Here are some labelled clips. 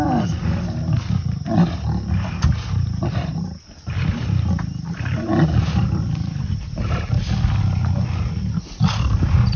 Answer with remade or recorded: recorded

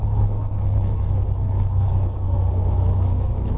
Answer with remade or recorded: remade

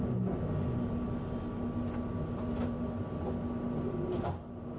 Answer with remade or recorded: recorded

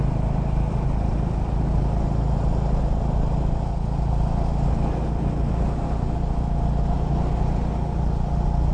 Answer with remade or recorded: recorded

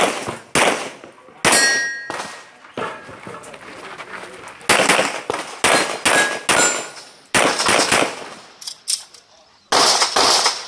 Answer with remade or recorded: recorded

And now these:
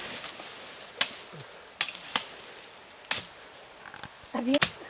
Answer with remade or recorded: recorded